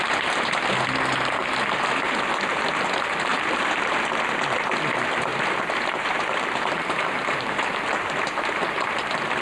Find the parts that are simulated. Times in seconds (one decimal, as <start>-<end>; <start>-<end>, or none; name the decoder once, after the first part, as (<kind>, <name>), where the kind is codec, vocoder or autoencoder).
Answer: 3.3-3.9 (vocoder, BigVGAN v2); 5.3-7.8